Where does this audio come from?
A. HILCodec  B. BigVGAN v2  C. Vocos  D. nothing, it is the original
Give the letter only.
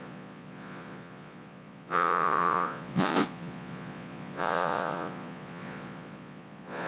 C